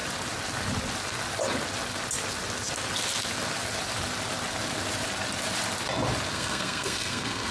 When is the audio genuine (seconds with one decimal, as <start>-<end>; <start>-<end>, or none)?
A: 0.0-6.3